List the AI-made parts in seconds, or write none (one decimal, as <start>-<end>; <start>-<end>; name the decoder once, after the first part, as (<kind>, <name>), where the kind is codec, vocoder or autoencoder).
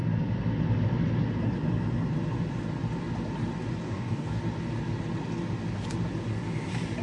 3.8-4.4 (codec, DAC)